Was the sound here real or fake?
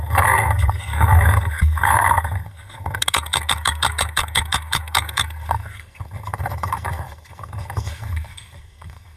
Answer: fake